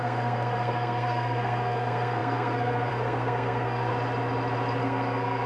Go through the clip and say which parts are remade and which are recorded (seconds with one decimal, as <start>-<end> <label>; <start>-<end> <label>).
0.0-3.9 remade; 3.9-4.8 recorded; 4.8-5.5 remade